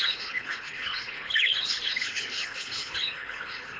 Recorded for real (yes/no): no